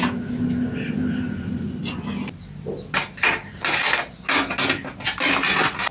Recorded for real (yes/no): yes